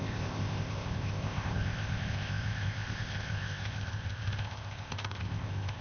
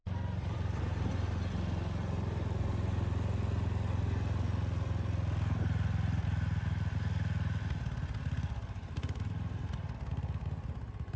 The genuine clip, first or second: second